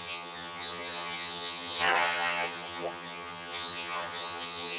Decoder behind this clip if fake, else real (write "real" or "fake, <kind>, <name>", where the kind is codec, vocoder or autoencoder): fake, vocoder, HiFi-GAN